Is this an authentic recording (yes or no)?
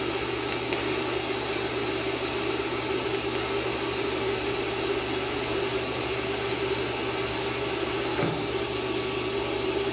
yes